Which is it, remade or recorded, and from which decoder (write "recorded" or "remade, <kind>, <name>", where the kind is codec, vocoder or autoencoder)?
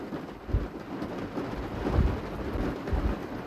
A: recorded